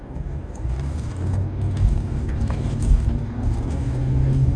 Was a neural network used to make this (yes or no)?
yes